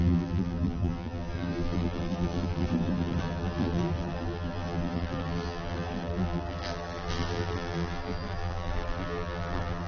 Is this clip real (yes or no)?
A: no